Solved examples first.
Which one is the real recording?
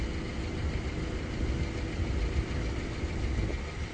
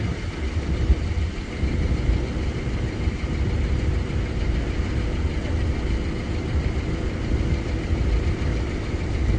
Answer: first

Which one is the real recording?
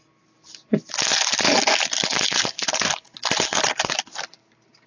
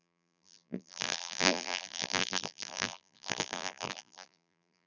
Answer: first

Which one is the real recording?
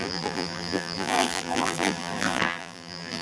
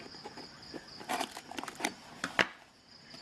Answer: second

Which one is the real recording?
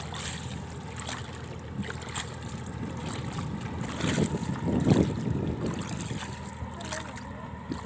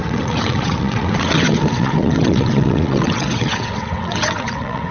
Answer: first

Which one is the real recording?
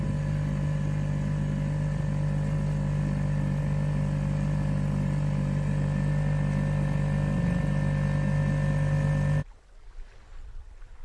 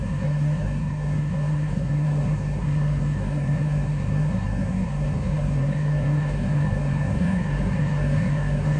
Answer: first